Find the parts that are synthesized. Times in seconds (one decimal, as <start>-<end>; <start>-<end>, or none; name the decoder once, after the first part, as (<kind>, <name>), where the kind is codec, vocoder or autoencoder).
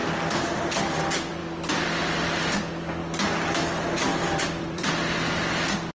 0.0-0.6 (vocoder, BigVGAN v2); 4.1-4.9